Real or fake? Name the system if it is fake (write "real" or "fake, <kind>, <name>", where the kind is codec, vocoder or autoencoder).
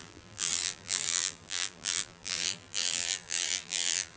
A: fake, vocoder, BigVGAN v2